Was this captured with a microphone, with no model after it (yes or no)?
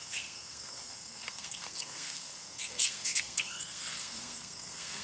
no